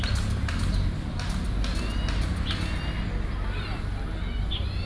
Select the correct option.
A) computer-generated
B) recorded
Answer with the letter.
B